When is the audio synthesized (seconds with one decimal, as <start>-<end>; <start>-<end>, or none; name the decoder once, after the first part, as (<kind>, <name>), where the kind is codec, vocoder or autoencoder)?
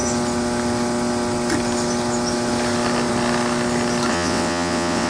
4.1-5.1 (vocoder, WaveNeXt)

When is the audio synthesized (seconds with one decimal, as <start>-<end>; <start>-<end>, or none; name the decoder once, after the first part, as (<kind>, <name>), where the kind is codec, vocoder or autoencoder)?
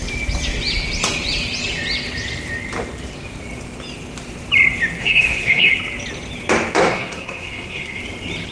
5.0-5.7 (codec, SNAC); 6.9-8.0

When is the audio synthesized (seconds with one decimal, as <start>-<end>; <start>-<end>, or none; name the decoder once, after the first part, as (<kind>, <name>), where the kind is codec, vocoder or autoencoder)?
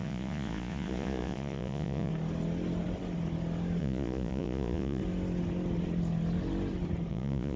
0.0-2.1 (vocoder, Vocos); 3.8-5.0; 7.1-7.6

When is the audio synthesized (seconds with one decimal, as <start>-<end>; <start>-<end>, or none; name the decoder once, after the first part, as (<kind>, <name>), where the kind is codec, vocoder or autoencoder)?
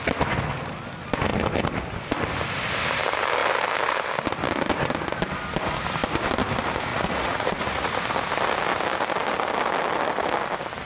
6.9-8.0 (vocoder, Vocos)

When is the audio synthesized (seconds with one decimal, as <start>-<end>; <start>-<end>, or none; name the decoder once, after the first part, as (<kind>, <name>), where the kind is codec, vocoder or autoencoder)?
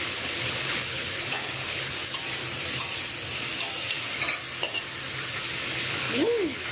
0.0-2.0 (codec, HILCodec); 5.8-6.7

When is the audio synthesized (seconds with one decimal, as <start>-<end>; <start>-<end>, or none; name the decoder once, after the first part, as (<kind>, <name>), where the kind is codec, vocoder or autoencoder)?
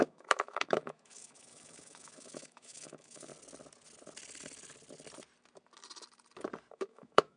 0.0-3.3 (autoencoder, DAC-VAE); 6.7-7.4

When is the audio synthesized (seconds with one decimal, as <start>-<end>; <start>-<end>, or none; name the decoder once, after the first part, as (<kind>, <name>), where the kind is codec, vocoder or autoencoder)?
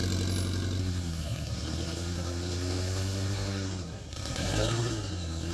0.8-5.5 (codec, SNAC)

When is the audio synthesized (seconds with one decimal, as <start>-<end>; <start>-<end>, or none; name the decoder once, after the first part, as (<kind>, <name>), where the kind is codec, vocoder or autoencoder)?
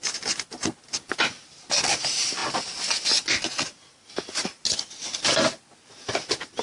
none